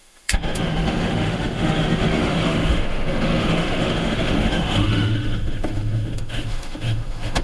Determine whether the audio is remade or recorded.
remade